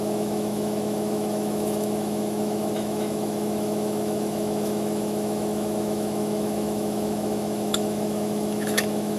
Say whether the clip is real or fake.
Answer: fake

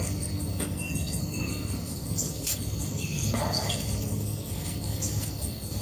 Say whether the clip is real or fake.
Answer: fake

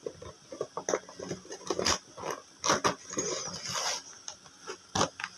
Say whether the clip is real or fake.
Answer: real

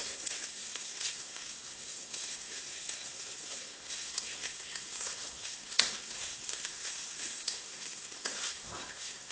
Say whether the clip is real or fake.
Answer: fake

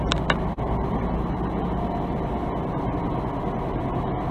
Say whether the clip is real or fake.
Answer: real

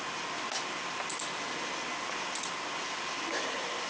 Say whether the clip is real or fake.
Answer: real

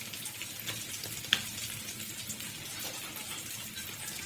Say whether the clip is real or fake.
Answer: real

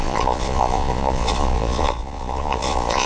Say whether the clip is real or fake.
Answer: fake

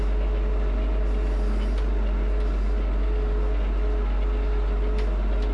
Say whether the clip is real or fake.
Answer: real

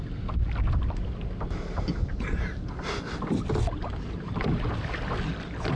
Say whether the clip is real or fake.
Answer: real